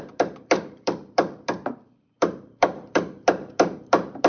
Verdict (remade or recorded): remade